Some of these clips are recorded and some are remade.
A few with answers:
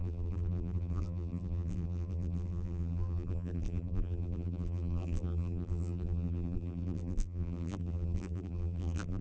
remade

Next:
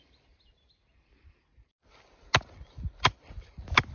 recorded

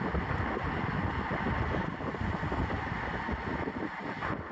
recorded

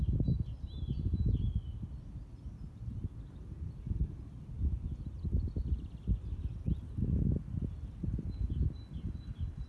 recorded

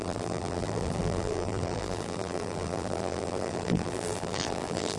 remade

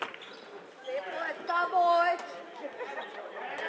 recorded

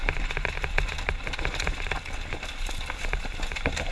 recorded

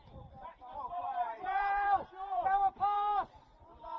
remade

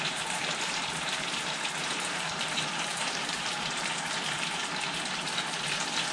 remade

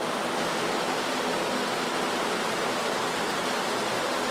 recorded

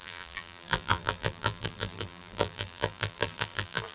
remade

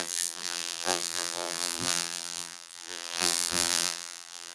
remade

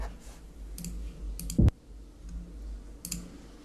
recorded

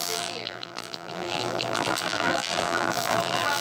remade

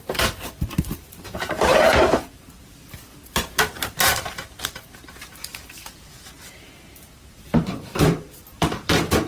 remade